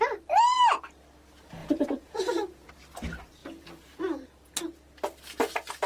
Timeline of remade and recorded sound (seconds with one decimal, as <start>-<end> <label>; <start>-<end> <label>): 0.0-1.6 recorded; 1.6-2.7 remade; 2.7-3.4 recorded; 3.4-4.7 remade; 4.7-5.9 recorded